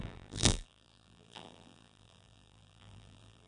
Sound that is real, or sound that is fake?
fake